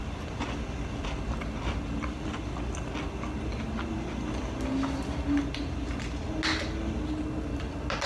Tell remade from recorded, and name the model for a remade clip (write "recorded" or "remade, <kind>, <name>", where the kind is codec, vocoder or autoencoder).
recorded